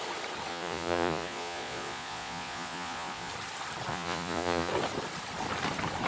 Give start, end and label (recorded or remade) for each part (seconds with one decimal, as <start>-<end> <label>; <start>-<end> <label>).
0.0-0.5 recorded; 0.5-3.3 remade; 3.3-3.9 recorded; 3.9-4.7 remade; 4.7-6.1 recorded